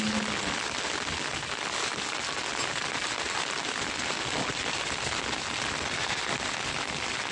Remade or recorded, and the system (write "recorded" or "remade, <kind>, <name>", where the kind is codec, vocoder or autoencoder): recorded